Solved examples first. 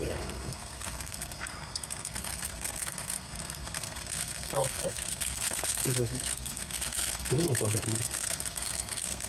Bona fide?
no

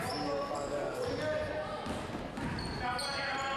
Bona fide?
yes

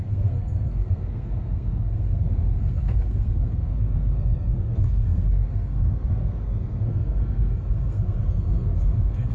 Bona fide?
no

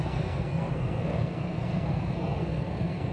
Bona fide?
no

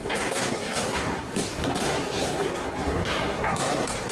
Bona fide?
no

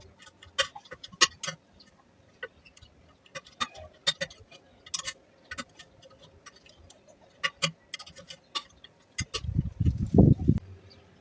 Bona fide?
yes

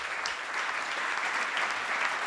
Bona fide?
yes